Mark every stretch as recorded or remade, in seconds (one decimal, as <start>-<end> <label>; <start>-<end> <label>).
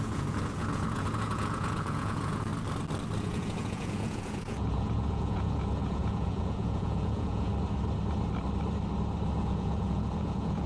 0.0-2.5 remade; 2.5-3.2 recorded; 3.2-7.5 remade; 7.5-9.4 recorded; 9.4-10.7 remade